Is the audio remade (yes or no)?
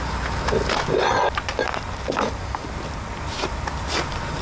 no